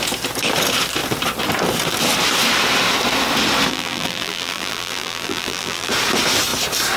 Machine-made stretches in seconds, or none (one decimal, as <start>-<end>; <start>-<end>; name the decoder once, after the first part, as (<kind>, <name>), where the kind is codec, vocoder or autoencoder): 3.7-5.9 (vocoder, BigVGAN v2)